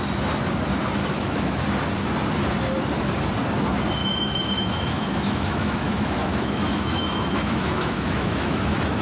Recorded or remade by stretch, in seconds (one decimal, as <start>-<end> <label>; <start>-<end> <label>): 0.0-1.0 recorded; 1.0-1.6 remade; 1.6-4.0 recorded; 4.0-9.0 remade